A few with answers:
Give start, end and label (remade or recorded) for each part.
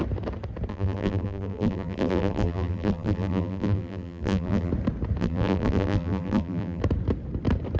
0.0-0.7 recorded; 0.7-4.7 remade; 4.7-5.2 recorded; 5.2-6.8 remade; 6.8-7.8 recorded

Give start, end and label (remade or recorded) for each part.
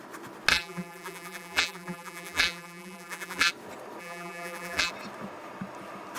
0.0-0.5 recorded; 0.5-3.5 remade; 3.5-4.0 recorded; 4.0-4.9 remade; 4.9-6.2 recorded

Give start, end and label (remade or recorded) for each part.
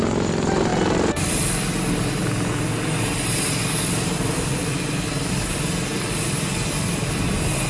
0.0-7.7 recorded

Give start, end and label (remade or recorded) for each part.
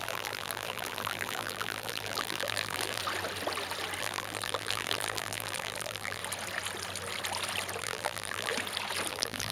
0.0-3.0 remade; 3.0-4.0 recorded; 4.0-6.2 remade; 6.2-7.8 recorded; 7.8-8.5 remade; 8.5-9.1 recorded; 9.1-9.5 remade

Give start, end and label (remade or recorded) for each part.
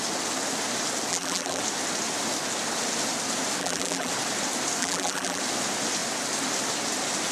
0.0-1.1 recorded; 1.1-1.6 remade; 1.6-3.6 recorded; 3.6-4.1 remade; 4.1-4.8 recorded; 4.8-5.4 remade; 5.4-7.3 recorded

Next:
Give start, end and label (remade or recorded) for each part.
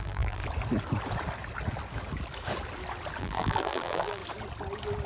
0.0-0.4 remade; 0.4-3.2 recorded; 3.2-4.2 remade; 4.2-5.1 recorded